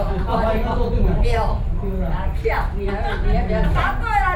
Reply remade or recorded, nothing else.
recorded